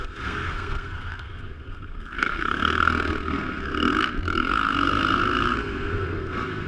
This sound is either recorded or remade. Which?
remade